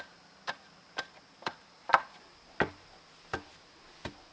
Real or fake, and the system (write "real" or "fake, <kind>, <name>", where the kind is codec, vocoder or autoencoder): real